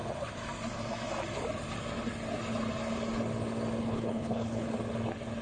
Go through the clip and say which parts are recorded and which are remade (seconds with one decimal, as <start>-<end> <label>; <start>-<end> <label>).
0.0-3.8 recorded; 3.8-4.7 remade; 4.7-5.4 recorded